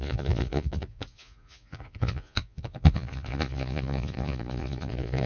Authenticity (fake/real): fake